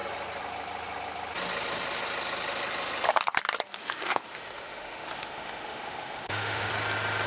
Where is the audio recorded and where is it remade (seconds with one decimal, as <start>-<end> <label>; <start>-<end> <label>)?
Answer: 0.0-3.8 recorded; 3.8-6.7 remade; 6.7-7.3 recorded